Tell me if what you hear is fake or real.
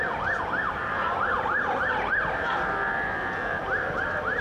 fake